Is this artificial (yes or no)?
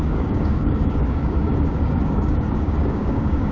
yes